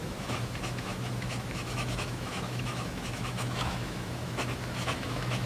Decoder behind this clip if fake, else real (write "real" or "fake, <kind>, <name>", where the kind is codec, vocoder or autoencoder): fake, autoencoder, DAC-VAE